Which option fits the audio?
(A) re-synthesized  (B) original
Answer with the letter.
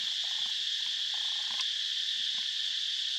B